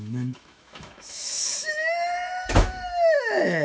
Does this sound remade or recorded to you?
remade